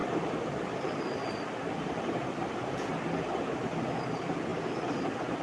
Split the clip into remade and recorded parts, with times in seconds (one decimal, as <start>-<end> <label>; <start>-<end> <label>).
0.0-1.7 remade; 1.7-4.5 recorded; 4.5-5.4 remade